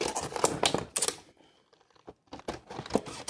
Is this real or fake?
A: real